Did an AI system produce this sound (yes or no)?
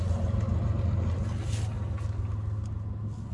no